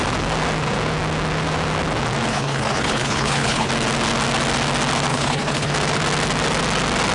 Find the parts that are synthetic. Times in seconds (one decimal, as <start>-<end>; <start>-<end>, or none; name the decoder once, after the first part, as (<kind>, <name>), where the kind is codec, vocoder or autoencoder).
2.3-3.7 (codec, HILCodec); 5.1-5.7